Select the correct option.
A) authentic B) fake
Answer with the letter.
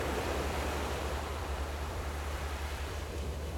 B